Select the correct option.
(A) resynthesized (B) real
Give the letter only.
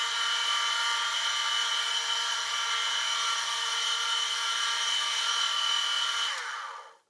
B